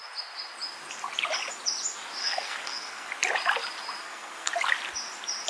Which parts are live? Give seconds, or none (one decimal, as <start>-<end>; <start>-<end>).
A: 0.0-2.2; 3.1-4.0; 4.5-5.5